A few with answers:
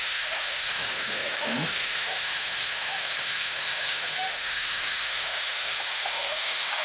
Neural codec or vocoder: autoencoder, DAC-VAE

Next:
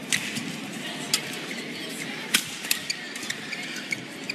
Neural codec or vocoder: none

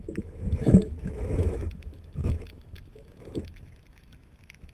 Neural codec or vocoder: autoencoder, DAC-VAE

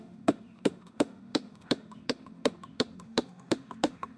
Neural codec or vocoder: autoencoder, DAC-VAE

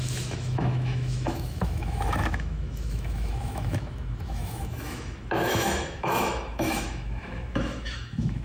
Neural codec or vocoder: autoencoder, DAC-VAE